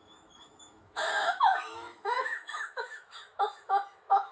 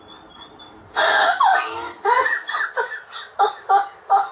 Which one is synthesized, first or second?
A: first